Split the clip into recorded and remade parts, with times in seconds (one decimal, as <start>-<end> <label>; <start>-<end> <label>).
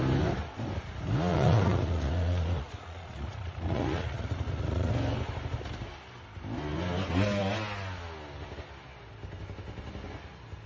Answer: 0.0-1.3 recorded; 1.3-4.9 remade; 4.9-10.7 recorded